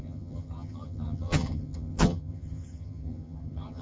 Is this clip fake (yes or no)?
yes